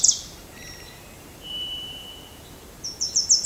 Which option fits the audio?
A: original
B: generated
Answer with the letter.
B